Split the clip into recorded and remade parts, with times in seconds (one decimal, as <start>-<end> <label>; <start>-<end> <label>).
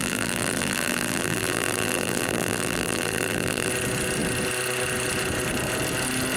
0.0-3.7 remade; 3.7-6.4 recorded